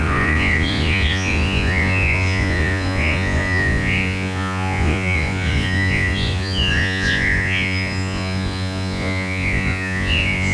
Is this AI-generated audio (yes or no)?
yes